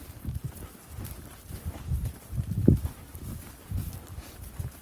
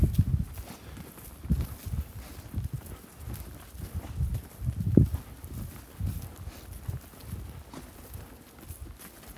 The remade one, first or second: first